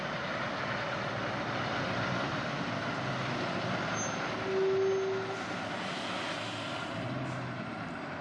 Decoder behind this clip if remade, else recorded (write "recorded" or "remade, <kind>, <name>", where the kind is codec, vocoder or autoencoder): recorded